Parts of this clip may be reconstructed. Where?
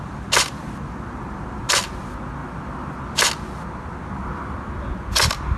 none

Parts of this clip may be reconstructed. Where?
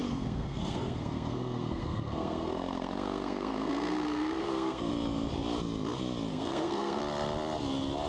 0.0-4.9 (codec, SNAC); 6.3-7.0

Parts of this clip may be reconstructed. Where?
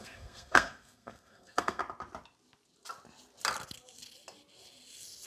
0.0-1.8 (codec, SNAC)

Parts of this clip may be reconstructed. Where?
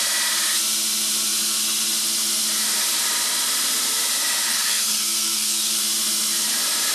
4.5-5.8 (codec, SNAC)